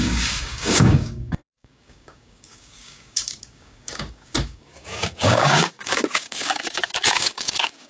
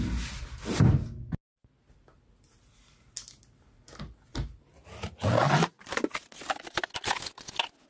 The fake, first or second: first